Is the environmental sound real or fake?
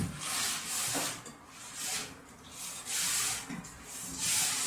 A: real